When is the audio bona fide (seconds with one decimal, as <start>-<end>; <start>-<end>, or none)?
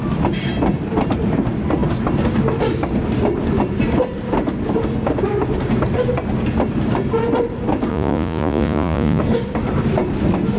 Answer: 0.0-7.9; 9.2-10.6